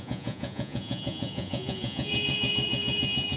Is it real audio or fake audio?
fake